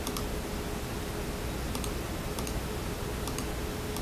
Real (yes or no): yes